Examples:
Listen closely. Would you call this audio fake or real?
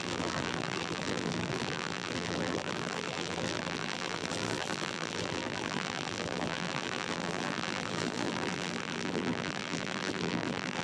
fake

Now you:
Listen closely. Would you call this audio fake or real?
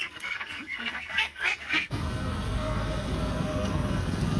fake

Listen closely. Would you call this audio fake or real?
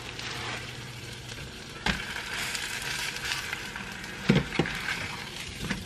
fake